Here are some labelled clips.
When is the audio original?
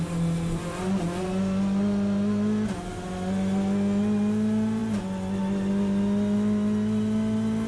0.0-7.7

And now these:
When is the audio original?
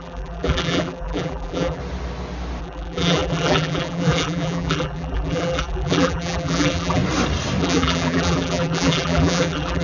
1.8-2.6; 7.0-7.6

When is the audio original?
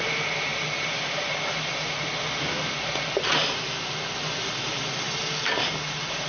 0.0-6.3